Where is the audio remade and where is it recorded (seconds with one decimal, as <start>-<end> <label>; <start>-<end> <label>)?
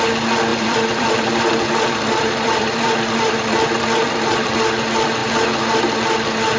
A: 0.0-0.5 recorded; 0.5-4.5 remade; 4.5-6.6 recorded